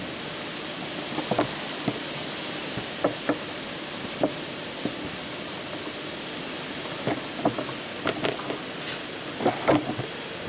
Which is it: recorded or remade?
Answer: recorded